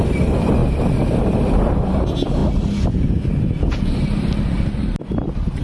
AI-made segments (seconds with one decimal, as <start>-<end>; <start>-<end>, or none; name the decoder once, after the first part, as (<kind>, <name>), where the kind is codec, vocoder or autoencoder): none

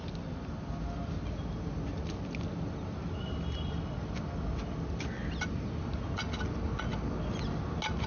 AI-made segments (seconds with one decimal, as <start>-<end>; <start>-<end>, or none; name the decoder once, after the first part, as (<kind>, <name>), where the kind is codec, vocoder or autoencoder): none